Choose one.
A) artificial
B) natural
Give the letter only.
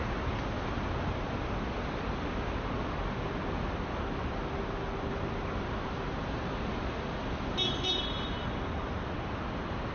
B